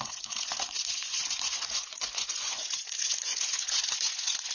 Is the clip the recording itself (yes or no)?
no